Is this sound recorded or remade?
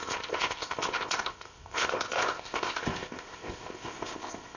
remade